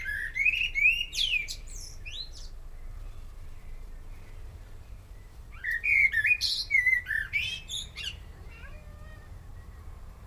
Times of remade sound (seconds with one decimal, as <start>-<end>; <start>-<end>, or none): 0.0-10.3